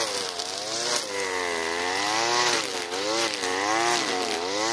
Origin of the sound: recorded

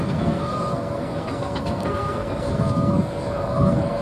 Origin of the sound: remade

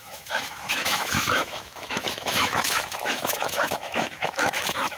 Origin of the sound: remade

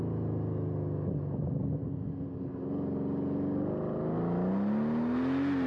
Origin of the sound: recorded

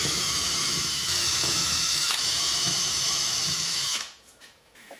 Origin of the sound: remade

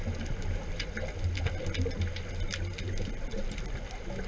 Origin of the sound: recorded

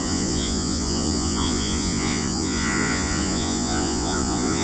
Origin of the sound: remade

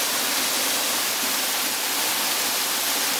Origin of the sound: recorded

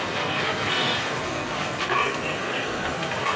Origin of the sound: remade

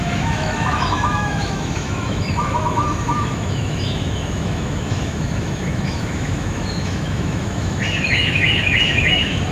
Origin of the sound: remade